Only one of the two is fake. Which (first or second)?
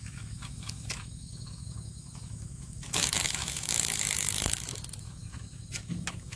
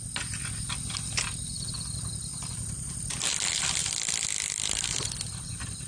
first